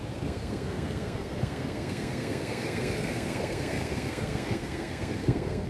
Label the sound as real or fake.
fake